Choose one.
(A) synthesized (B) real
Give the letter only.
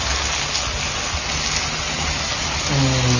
B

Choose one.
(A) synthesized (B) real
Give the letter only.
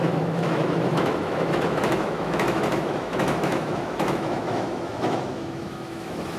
A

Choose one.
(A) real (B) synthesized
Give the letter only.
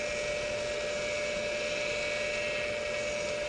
A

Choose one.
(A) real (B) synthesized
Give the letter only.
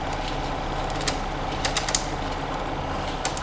A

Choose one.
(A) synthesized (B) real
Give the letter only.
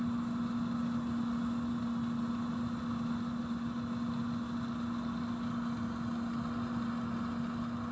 B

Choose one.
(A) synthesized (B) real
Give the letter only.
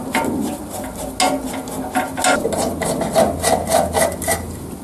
B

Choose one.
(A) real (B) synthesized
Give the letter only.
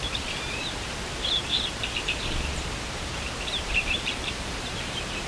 B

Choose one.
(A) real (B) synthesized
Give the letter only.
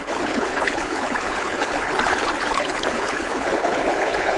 B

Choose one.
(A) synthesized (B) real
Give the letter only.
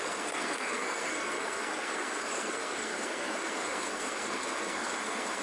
A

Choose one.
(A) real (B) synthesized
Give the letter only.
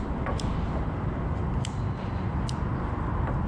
A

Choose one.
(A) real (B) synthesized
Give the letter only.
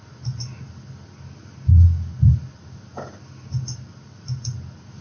A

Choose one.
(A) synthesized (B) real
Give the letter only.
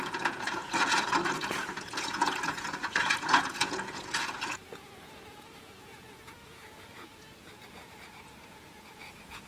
A